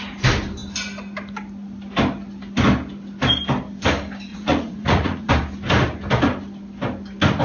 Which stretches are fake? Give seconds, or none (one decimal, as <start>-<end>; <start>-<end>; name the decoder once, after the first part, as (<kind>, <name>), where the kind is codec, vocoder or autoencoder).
4.3-5.3 (vocoder, Vocos)